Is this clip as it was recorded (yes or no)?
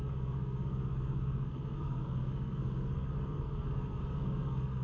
no